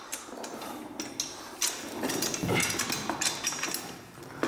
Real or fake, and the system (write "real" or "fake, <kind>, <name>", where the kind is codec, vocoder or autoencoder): real